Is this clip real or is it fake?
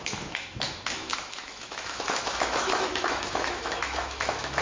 fake